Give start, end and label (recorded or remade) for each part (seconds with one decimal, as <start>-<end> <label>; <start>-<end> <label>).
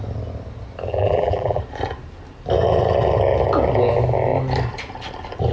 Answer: 0.0-0.9 recorded; 0.9-1.6 remade; 1.6-5.5 recorded